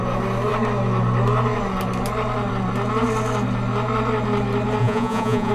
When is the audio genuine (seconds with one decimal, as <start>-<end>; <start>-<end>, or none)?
0.0-4.8